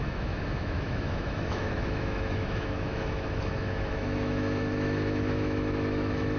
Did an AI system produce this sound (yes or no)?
yes